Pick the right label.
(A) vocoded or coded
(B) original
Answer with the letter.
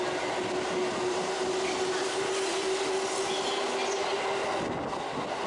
B